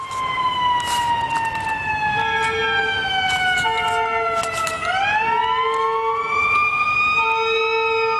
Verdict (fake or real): real